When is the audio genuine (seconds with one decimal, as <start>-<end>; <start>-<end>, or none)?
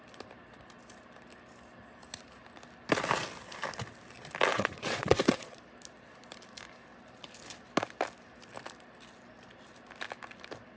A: 0.0-4.5; 5.6-10.8